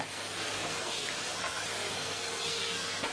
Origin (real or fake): fake